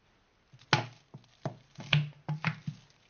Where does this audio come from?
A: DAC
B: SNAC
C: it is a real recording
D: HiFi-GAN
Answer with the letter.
C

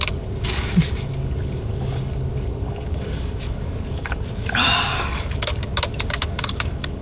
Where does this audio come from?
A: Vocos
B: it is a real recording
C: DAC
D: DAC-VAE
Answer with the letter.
C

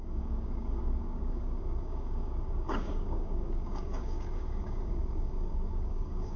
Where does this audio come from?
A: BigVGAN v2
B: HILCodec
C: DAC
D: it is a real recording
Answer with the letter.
C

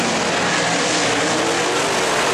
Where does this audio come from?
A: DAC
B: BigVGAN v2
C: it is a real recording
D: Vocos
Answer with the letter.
C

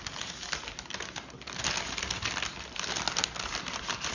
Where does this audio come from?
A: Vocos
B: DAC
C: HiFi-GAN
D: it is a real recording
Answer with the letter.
D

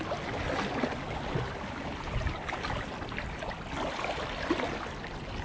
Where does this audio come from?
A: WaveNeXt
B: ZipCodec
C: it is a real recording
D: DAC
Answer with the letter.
C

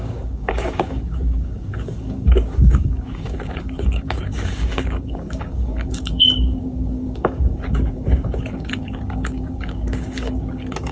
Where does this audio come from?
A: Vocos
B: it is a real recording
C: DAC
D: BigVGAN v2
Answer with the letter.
C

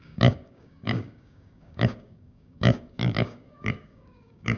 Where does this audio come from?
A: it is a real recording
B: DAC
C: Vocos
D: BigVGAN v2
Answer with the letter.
B